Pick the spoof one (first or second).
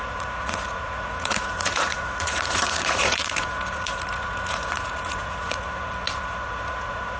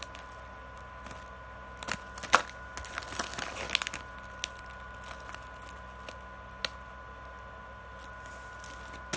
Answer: first